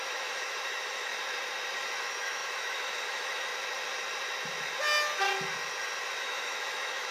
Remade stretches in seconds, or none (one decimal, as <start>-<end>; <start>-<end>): 0.0-1.1; 2.0-3.5; 6.2-7.1